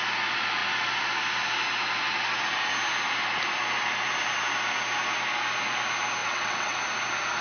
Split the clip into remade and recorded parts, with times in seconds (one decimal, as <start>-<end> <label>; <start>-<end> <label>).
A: 0.0-6.2 recorded; 6.2-6.8 remade; 6.8-7.4 recorded

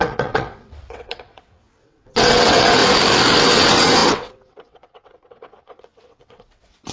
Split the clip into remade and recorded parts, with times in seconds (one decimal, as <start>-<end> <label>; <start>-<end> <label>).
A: 0.0-2.8 remade; 2.8-3.4 recorded; 3.4-6.9 remade

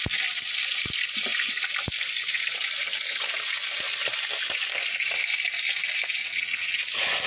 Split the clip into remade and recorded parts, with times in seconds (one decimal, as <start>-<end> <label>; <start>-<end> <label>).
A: 0.0-6.2 recorded; 6.2-6.8 remade; 6.8-7.3 recorded

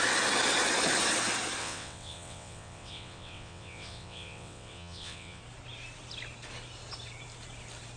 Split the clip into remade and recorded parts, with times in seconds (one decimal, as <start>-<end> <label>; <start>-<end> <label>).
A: 0.0-1.6 recorded; 1.6-5.4 remade; 5.4-8.0 recorded

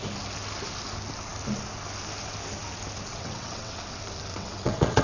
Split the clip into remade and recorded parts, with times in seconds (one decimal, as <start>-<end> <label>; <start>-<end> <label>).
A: 0.0-3.1 recorded; 3.1-3.8 remade; 3.8-4.3 recorded; 4.3-5.0 remade

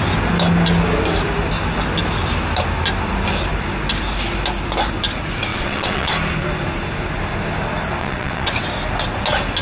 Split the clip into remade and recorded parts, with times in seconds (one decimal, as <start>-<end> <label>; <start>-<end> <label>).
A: 0.0-5.5 recorded; 5.5-6.1 remade; 6.1-8.0 recorded; 8.0-8.5 remade; 8.5-9.6 recorded

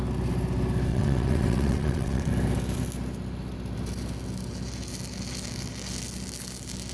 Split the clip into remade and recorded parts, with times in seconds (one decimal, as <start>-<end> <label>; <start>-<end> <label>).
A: 0.0-0.9 recorded; 0.9-2.3 remade; 2.3-6.9 recorded